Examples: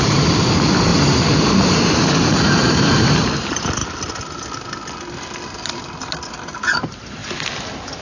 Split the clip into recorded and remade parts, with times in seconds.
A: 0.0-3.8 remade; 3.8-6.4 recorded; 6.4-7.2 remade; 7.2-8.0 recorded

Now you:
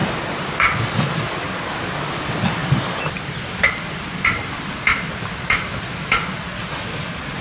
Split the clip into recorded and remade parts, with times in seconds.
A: 0.0-7.4 recorded

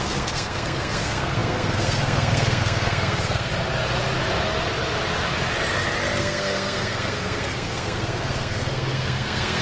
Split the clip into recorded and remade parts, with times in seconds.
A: 0.0-3.5 remade; 3.5-6.2 recorded; 6.2-9.6 remade

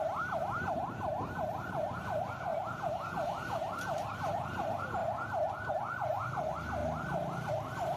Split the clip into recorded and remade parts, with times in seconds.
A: 0.0-5.0 remade; 5.0-5.7 recorded; 5.7-6.8 remade; 6.8-7.5 recorded; 7.5-8.0 remade

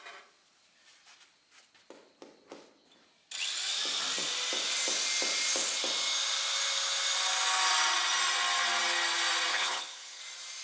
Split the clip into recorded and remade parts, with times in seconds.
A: 0.0-9.5 recorded; 9.5-10.2 remade; 10.2-10.6 recorded